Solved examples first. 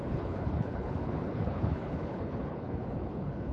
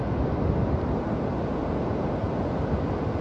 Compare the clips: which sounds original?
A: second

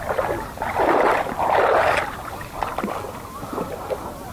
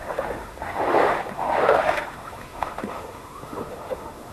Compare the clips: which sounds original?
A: first